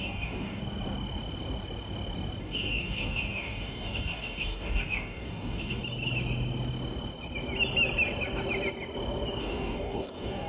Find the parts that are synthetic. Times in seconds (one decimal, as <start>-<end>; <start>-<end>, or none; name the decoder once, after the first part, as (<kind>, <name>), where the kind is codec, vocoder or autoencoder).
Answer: 0.0-0.6 (codec, DAC); 2.4-5.8; 9.4-10.5